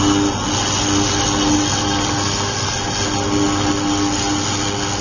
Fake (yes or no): no